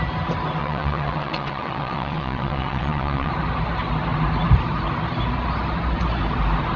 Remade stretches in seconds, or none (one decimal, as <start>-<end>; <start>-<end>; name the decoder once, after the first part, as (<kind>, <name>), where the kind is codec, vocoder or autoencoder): 0.6-3.3 (vocoder, WaveNeXt)

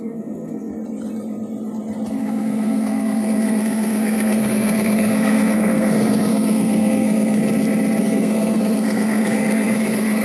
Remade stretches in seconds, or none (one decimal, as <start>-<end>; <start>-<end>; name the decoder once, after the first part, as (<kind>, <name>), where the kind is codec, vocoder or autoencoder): 0.0-0.7 (codec, SNAC); 2.2-7.4; 8.0-10.2

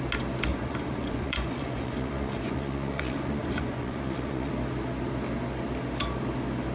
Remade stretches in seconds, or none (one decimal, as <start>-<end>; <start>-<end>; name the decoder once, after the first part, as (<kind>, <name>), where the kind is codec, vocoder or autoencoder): 0.5-4.5 (vocoder, Vocos)

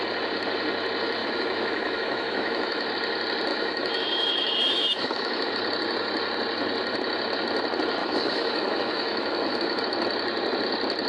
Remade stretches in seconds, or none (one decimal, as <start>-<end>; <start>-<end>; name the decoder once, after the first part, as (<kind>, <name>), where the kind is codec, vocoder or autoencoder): 1.2-2.9 (autoencoder, DAC-VAE); 3.5-5.5; 8.0-9.8

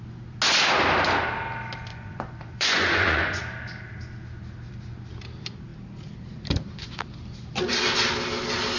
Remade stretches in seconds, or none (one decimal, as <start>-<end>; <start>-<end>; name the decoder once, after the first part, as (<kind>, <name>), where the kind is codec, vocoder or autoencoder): 1.9-3.4 (vocoder, Vocos)

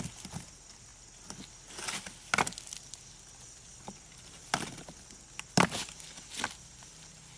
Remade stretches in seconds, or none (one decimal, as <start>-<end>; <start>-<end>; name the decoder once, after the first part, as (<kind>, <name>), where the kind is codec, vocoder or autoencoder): none

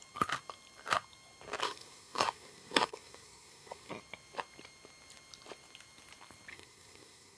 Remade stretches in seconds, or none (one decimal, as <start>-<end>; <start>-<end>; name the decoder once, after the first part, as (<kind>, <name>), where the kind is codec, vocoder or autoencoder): 1.6-3.9 (codec, SNAC); 6.5-7.4

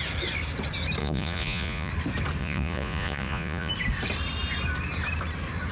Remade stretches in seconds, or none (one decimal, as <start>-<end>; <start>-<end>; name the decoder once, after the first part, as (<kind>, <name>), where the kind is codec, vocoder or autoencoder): 1.0-1.9 (vocoder, Vocos); 2.4-3.7